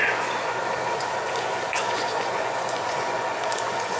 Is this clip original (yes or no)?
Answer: no